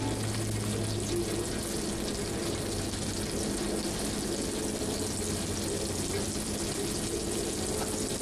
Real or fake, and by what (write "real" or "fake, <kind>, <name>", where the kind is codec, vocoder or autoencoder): real